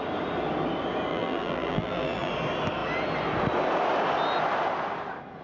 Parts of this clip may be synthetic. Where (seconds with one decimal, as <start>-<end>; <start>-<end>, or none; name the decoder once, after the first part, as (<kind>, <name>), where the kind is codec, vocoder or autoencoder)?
1.1-2.3 (vocoder, BigVGAN v2)

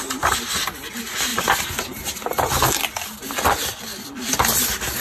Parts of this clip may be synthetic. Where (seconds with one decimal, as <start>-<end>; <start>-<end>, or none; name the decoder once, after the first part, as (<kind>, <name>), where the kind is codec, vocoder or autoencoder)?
none

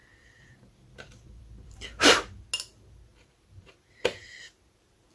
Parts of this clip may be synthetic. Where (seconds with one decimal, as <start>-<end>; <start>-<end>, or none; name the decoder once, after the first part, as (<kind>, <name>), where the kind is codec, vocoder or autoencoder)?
0.0-2.4 (vocoder, BigVGAN v2); 3.1-4.4

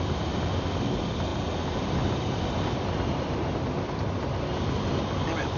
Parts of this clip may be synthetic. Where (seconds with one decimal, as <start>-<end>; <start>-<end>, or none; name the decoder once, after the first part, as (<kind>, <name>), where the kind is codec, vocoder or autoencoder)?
none

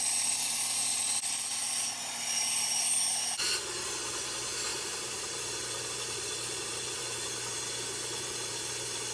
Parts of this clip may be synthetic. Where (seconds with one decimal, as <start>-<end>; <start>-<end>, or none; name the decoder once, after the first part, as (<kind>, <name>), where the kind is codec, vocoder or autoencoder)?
4.7-7.0 (vocoder, BigVGAN v2)

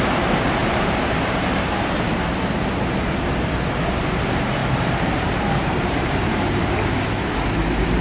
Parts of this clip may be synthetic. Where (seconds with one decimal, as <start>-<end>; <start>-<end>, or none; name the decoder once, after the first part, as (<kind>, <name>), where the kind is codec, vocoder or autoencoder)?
0.6-3.3 (vocoder, BigVGAN v2); 4.6-6.9

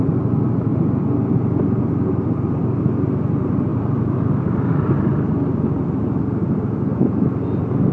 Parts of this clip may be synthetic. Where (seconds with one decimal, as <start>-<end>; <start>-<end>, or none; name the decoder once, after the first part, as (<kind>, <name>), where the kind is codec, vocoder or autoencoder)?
3.7-6.2 (vocoder, BigVGAN v2)

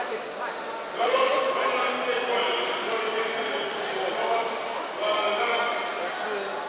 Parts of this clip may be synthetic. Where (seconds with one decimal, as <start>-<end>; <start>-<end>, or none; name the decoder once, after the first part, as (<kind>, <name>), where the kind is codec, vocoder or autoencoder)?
none